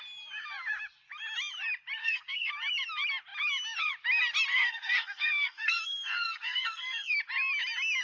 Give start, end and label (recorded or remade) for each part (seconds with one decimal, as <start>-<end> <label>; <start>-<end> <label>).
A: 0.0-2.0 recorded; 2.0-2.5 remade; 2.5-4.5 recorded; 4.5-7.2 remade; 7.2-8.0 recorded